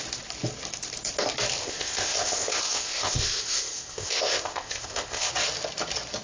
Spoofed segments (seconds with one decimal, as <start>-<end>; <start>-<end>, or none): 1.6-5.3